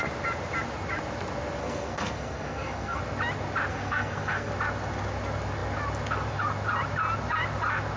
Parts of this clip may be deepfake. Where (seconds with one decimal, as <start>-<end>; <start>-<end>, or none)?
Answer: 1.6-3.0; 3.7-4.5